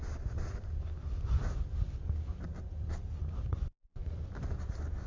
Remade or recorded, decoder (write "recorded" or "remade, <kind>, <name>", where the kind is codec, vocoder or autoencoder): remade, vocoder, BigVGAN v2